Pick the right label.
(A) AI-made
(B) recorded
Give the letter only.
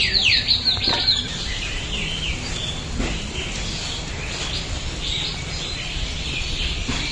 A